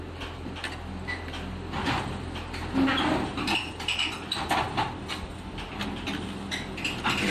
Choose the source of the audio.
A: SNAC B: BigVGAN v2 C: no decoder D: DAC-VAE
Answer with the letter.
C